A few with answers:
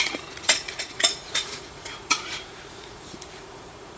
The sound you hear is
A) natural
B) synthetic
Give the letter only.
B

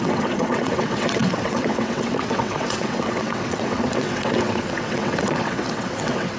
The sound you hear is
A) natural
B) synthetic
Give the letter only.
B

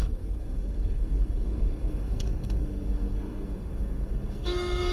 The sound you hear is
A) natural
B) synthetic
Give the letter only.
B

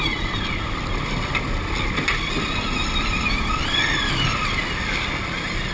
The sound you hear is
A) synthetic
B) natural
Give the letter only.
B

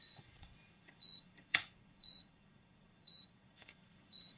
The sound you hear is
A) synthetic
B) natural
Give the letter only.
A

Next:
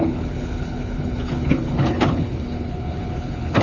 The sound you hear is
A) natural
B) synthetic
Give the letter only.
B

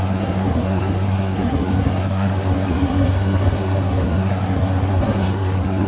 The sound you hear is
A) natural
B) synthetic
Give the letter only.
B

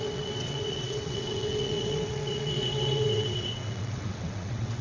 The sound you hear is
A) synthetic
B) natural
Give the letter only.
A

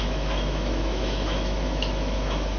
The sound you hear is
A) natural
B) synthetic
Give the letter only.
B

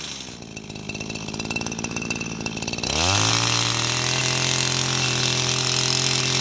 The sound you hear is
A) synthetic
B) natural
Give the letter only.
B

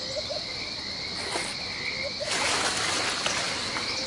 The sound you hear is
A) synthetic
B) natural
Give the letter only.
B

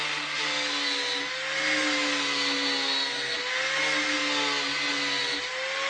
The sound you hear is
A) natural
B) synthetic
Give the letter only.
A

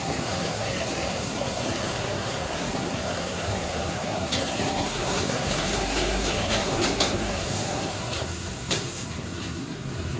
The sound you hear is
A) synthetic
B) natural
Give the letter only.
A